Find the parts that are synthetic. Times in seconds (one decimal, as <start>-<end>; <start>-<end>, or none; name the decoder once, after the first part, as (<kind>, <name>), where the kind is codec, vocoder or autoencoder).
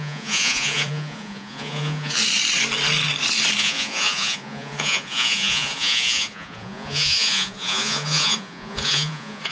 0.0-2.2 (vocoder, Vocos); 3.6-9.5